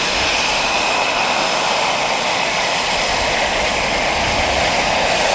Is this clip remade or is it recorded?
recorded